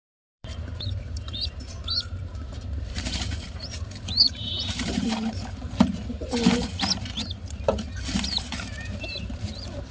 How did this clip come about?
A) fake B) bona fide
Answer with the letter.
A